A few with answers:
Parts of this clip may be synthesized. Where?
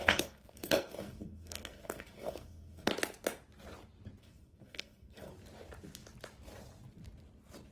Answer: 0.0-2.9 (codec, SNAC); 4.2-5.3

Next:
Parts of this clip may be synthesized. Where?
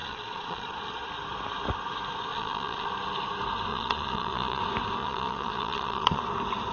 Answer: 0.0-1.1 (vocoder, Vocos); 2.3-2.9; 3.7-4.6; 5.0-6.2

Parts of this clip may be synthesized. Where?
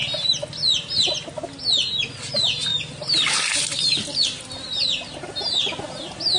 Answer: none